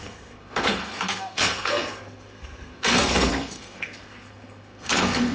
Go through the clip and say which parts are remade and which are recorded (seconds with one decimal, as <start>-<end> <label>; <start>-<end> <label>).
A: 0.0-5.3 remade